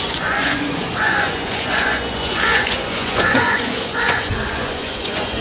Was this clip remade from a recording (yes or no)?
yes